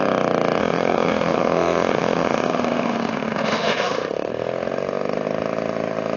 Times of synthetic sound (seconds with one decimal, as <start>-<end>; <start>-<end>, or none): 0.6-4.3

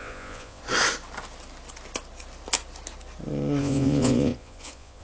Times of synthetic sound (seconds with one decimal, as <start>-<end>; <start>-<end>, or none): 0.0-0.6; 3.6-5.0

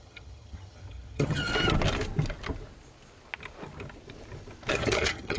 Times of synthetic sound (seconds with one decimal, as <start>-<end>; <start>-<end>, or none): 0.0-1.5; 4.7-5.4